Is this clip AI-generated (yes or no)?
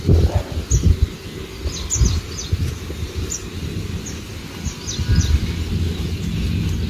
no